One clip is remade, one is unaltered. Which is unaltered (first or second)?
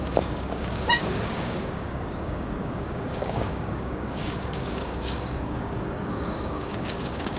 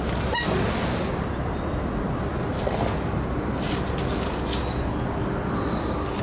second